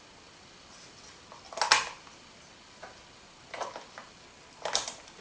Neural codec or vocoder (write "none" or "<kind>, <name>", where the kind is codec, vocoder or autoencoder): none